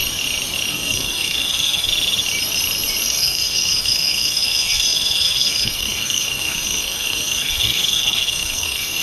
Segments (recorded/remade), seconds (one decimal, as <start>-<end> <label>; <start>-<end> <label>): 0.0-0.7 recorded; 0.7-1.9 remade; 1.9-3.0 recorded; 3.0-9.0 remade